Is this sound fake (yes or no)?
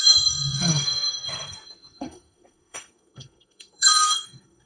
yes